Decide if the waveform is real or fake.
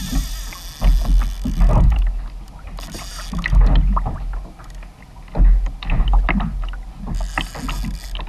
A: real